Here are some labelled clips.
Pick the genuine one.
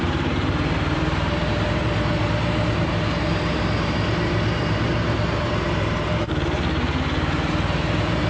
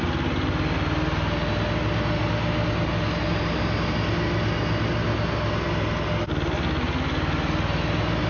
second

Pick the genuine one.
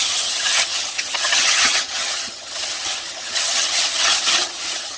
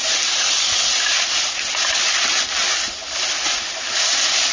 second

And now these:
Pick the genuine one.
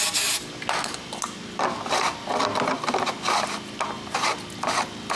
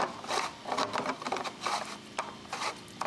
first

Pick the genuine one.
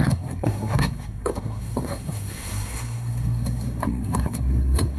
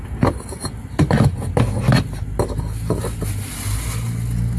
second